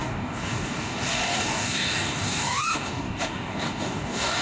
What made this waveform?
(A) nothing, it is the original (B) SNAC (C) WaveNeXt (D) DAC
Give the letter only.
D